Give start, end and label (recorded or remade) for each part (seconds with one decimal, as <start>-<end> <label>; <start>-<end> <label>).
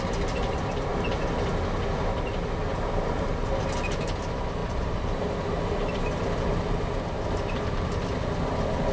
0.0-2.7 recorded; 2.7-3.5 remade; 3.5-4.6 recorded; 4.6-6.2 remade; 6.2-8.9 recorded